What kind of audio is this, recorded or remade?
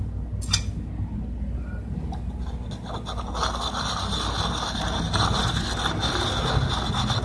recorded